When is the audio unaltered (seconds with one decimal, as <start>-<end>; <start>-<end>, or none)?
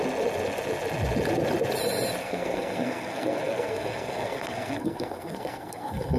0.0-2.2